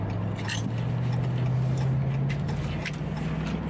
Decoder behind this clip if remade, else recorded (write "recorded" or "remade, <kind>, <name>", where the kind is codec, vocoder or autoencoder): recorded